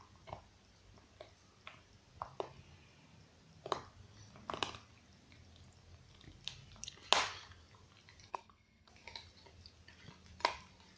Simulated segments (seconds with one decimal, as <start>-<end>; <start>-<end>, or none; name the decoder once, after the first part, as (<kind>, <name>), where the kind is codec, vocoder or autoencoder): 8.3-8.9 (codec, SNAC)